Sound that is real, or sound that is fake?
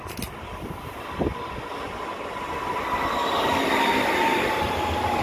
real